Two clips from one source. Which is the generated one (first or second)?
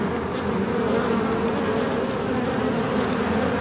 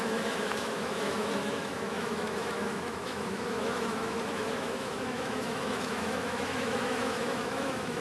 second